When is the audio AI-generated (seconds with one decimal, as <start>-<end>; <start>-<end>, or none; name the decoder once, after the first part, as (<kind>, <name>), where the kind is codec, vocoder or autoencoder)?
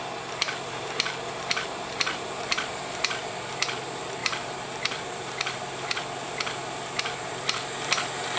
4.2-6.0 (vocoder, BigVGAN v2); 6.6-7.3